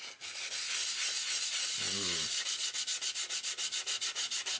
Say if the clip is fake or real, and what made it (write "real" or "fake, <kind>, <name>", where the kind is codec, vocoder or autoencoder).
real